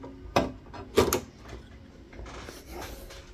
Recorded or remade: recorded